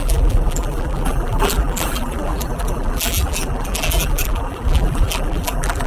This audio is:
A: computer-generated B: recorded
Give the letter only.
A